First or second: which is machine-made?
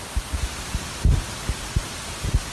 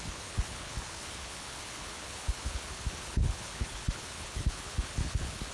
second